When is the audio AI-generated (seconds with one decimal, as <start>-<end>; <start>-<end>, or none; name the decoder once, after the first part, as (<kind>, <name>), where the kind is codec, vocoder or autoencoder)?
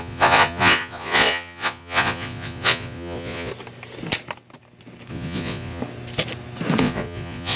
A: 0.0-3.5 (vocoder, Vocos); 5.1-5.8; 6.8-7.6